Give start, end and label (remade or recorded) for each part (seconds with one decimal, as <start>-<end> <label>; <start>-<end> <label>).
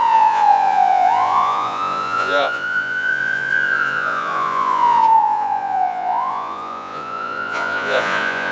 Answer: 0.0-8.5 remade